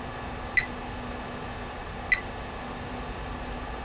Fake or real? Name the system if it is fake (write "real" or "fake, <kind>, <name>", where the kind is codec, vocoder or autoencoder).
real